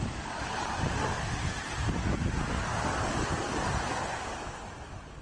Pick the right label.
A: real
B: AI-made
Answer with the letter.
A